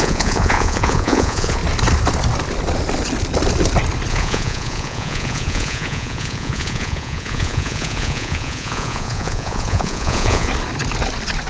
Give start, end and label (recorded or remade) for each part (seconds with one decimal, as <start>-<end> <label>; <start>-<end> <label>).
0.0-1.6 remade; 1.6-4.1 recorded; 4.1-10.5 remade; 10.5-11.5 recorded